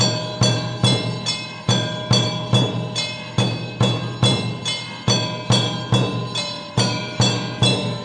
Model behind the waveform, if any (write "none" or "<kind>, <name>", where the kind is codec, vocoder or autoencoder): none